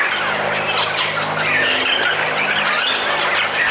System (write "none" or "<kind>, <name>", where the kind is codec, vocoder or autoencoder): none